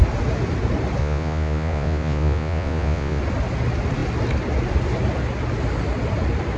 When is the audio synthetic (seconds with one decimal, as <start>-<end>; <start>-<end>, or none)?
1.0-3.2

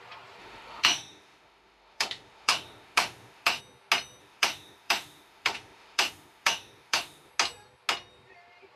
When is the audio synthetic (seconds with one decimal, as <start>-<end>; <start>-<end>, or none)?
0.4-3.6; 4.2-7.3

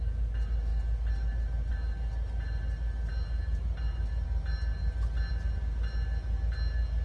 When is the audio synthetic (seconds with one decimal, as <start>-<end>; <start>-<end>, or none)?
none

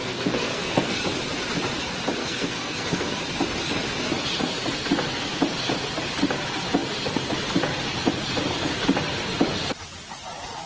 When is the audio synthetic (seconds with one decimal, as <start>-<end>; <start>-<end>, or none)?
0.0-1.0; 2.2-3.2

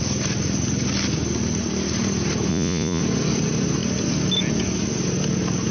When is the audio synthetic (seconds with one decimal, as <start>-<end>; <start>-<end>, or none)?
2.5-3.0

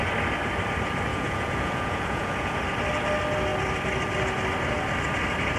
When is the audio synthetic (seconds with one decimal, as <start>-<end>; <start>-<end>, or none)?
1.1-2.6

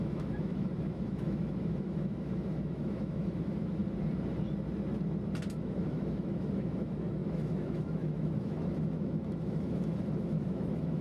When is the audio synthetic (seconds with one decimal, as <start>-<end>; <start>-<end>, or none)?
0.0-3.8; 5.6-11.0